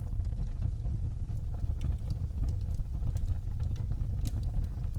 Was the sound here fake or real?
real